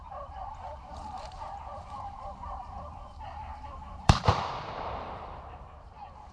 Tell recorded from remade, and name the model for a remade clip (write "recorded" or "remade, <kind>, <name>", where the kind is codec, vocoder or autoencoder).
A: remade, vocoder, BigVGAN v2